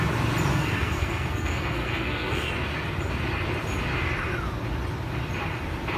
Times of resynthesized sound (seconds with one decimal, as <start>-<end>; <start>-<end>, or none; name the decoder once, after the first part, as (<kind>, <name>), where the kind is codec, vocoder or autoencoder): 0.5-2.5 (codec, SNAC)